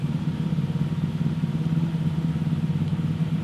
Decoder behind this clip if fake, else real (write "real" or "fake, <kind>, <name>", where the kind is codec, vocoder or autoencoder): real